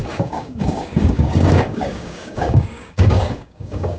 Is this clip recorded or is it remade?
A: remade